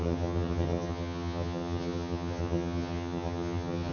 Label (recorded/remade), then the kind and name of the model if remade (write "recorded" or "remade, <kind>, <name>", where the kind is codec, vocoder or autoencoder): remade, vocoder, HiFi-GAN